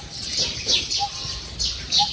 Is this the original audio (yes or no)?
no